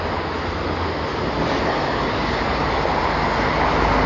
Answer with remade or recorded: recorded